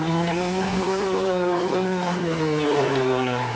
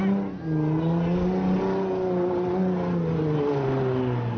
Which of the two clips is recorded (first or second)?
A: second